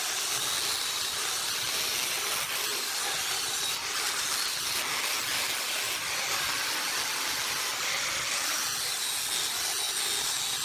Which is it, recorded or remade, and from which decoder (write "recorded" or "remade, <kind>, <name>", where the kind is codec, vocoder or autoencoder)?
recorded